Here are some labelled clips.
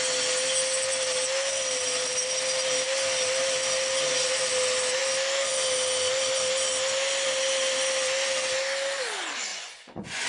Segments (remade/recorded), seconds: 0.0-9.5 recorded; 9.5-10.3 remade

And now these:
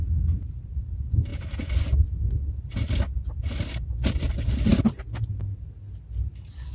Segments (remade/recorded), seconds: 0.0-6.7 recorded

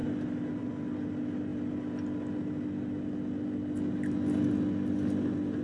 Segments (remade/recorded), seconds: 0.0-5.6 recorded

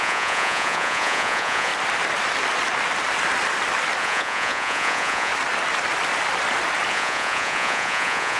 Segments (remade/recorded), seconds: 0.0-1.7 remade; 1.7-4.0 recorded; 4.0-5.3 remade; 5.3-6.9 recorded; 6.9-8.4 remade

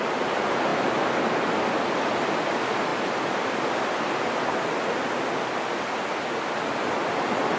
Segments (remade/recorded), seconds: 0.0-7.6 recorded

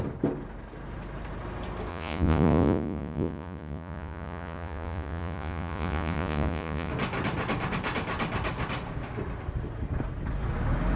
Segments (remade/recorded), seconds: 0.0-1.9 recorded; 1.9-6.9 remade; 6.9-11.0 recorded

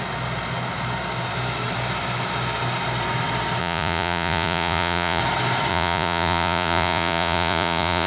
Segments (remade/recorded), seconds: 0.0-3.6 recorded; 3.6-5.2 remade; 5.2-5.7 recorded; 5.7-8.1 remade